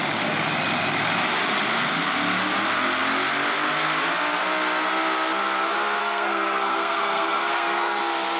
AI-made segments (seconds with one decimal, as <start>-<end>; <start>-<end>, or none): 6.0-8.0